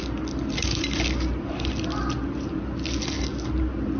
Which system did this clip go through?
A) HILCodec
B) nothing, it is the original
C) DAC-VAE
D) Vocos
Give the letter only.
B